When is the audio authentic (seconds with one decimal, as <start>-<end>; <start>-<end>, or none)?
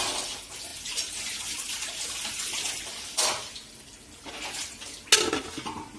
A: 0.0-6.0